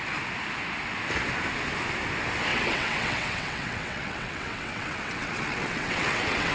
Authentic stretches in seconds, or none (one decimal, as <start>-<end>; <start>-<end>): 0.0-2.5